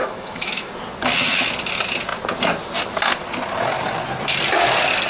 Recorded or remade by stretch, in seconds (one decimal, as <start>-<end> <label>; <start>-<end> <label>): 0.0-0.7 remade; 0.7-5.1 recorded